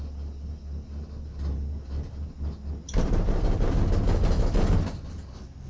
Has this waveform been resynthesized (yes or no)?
no